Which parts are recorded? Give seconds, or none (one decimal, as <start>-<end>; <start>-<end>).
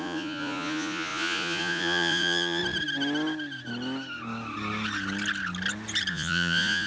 2.6-6.1